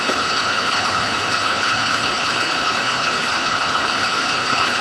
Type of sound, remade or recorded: remade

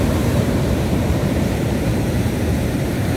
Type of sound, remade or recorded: remade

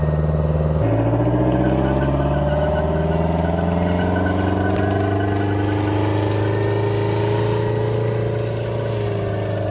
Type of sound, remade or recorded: recorded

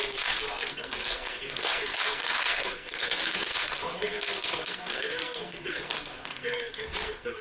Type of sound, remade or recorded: remade